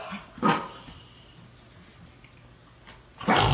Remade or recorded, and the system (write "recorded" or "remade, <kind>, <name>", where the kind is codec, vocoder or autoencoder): recorded